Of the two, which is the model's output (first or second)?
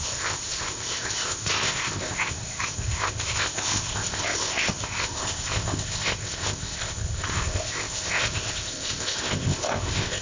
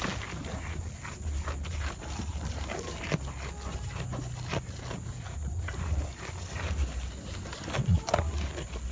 first